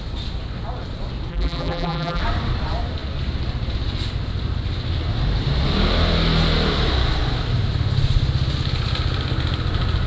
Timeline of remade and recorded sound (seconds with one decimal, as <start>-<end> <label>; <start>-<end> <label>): 0.0-1.3 recorded; 1.3-2.2 remade; 2.2-10.1 recorded